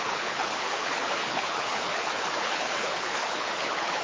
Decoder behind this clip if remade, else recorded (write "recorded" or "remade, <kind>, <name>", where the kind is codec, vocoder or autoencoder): remade, codec, HILCodec